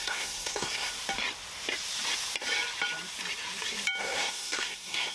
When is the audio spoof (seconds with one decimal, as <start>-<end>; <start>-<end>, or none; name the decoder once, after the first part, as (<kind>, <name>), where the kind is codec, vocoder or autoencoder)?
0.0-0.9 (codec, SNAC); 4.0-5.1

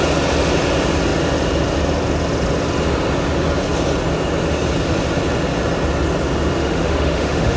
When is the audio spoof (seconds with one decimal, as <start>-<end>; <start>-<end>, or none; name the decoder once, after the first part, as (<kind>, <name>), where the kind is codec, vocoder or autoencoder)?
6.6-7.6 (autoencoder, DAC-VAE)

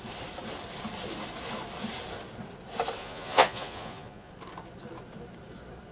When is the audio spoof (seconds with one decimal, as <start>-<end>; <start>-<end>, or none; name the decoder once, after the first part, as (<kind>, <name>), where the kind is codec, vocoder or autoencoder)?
3.0-4.3 (vocoder, Vocos)

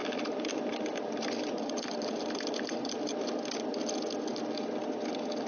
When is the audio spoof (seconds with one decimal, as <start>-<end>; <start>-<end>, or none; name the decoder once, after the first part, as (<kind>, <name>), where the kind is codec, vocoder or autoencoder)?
0.0-3.3 (vocoder, BigVGAN v2); 4.3-4.8

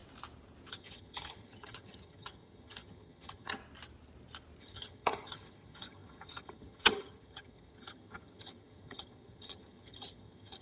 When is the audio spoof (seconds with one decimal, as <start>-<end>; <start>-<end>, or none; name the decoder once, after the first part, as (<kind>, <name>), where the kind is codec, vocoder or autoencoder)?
0.7-3.6 (vocoder, HiFi-GAN); 4.6-10.6

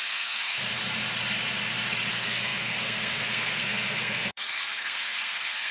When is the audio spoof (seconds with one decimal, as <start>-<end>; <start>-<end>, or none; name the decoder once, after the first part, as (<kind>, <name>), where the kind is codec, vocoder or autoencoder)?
0.0-0.7 (codec, SNAC); 2.1-5.7

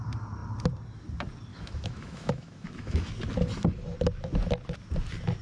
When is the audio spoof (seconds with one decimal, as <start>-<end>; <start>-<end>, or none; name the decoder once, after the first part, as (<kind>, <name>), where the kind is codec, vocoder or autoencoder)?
1.5-3.1 (autoencoder, DAC-VAE)